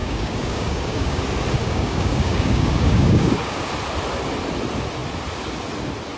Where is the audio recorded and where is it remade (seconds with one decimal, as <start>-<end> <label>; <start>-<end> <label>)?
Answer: 0.0-1.2 remade; 1.2-1.6 recorded; 1.6-3.7 remade; 3.7-6.2 recorded